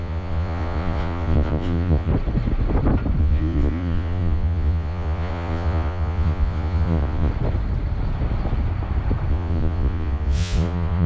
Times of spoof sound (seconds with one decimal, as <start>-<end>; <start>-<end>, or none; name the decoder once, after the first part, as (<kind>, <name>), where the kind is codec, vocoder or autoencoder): 0.0-2.1 (vocoder, Vocos); 3.2-7.3; 9.3-11.1